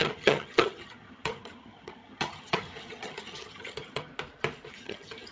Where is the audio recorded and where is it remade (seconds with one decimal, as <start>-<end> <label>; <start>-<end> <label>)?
0.0-4.1 remade; 4.1-4.7 recorded; 4.7-5.3 remade